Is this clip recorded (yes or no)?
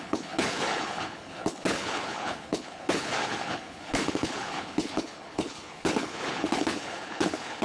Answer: no